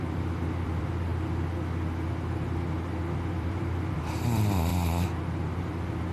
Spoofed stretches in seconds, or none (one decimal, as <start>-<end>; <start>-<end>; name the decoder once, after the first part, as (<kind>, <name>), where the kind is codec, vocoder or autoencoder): 0.0-1.1 (vocoder, BigVGAN v2); 3.3-4.7; 5.6-6.1